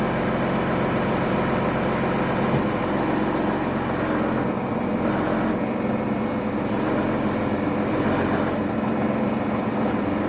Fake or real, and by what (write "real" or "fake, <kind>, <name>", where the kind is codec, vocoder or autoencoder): real